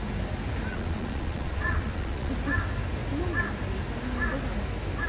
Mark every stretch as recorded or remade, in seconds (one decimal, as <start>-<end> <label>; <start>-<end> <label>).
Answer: 0.0-0.7 recorded; 0.7-2.3 remade; 2.3-5.1 recorded